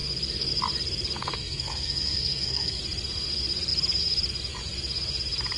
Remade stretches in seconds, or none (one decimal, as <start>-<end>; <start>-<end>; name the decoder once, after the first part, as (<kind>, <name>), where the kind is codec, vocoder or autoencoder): 1.2-2.8 (codec, SNAC)